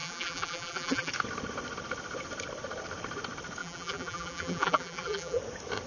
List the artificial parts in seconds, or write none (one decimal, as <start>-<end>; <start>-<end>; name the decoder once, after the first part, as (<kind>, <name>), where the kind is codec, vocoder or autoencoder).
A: 0.0-1.1 (vocoder, BigVGAN v2); 3.6-5.4